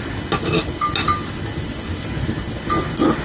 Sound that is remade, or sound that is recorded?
recorded